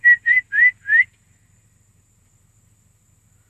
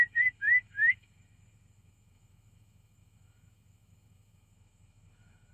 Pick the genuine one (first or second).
first